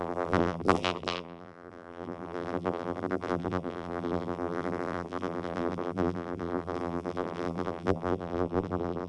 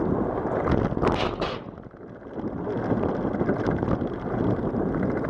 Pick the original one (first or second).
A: second